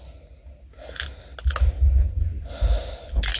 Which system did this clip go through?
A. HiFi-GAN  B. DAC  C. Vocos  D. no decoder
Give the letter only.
D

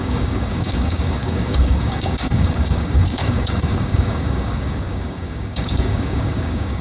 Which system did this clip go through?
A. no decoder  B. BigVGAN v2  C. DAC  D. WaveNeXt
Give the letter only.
C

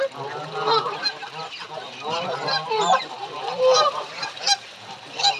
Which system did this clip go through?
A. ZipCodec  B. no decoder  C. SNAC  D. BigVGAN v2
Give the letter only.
D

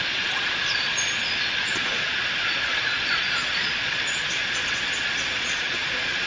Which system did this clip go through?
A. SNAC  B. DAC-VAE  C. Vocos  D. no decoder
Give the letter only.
C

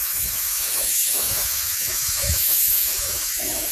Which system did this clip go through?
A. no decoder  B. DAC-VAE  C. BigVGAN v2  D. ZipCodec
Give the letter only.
B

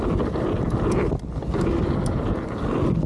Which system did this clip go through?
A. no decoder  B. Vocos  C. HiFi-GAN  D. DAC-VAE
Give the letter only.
A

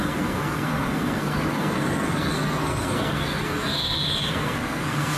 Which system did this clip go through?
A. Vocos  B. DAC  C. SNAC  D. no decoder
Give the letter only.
C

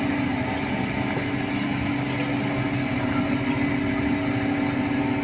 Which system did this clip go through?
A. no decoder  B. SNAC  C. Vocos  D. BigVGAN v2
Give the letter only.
A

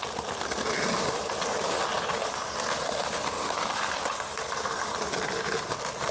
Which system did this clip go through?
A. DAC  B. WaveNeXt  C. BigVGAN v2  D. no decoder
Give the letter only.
D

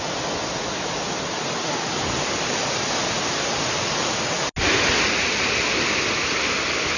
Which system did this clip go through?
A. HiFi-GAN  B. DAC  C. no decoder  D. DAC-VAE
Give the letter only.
C